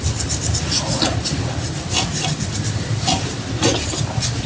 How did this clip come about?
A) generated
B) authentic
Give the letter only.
B